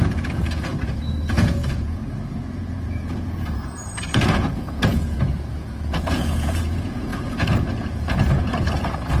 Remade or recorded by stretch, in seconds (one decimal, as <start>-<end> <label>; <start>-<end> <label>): 0.0-0.7 remade; 0.7-1.3 recorded; 1.3-2.0 remade; 2.0-2.5 recorded; 2.5-9.2 remade